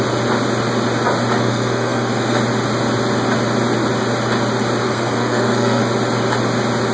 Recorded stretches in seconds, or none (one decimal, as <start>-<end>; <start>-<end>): 0.0-1.4; 2.4-4.8; 5.8-6.9